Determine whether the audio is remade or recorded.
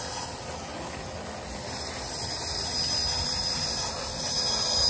recorded